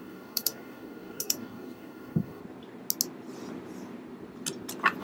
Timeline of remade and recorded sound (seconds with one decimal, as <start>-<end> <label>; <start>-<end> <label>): 0.0-2.4 remade; 2.4-5.0 recorded